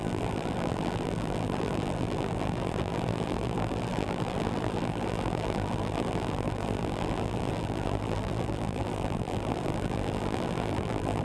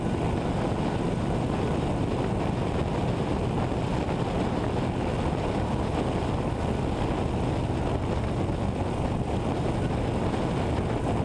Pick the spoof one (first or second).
first